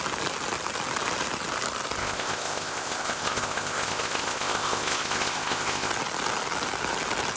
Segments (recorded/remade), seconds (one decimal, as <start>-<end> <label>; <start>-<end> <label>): 0.0-2.0 recorded; 2.0-5.9 remade; 5.9-7.4 recorded

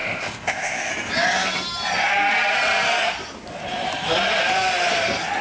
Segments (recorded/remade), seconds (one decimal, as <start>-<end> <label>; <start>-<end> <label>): 0.0-0.9 remade; 0.9-5.4 recorded